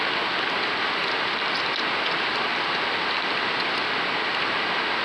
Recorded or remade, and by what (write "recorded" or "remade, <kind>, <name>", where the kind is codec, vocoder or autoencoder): recorded